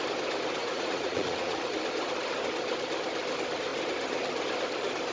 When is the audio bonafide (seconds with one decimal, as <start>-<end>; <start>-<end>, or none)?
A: 0.0-0.6; 1.6-5.1